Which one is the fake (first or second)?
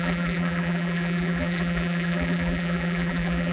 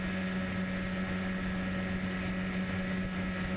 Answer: first